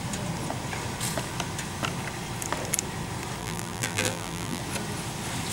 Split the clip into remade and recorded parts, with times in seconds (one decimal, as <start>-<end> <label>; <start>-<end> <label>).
0.0-3.4 recorded; 3.4-4.6 remade; 4.6-5.5 recorded